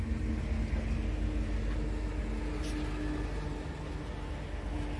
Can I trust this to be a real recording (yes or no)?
yes